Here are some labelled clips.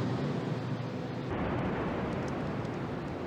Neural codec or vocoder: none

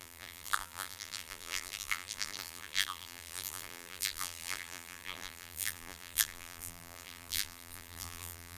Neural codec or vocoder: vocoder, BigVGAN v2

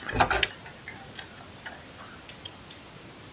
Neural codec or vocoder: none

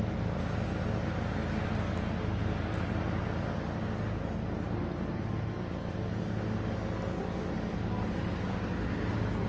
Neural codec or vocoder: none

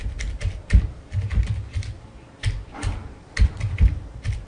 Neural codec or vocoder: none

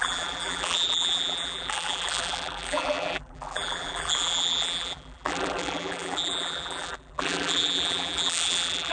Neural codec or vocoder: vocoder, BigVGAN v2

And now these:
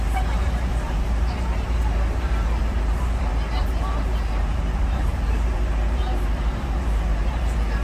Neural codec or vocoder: vocoder, BigVGAN v2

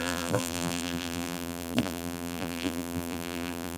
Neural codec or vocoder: vocoder, BigVGAN v2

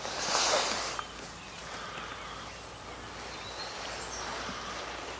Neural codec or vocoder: none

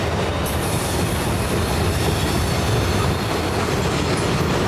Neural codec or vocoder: none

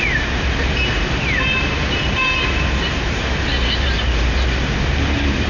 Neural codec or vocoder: vocoder, BigVGAN v2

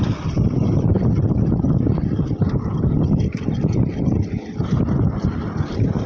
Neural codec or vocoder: vocoder, BigVGAN v2